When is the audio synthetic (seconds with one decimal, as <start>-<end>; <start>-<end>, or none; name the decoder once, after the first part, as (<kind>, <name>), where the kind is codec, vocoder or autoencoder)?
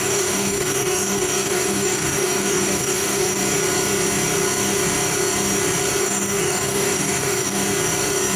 0.0-3.4 (codec, DAC); 6.0-7.6